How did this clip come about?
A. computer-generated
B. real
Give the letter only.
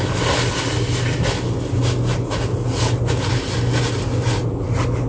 B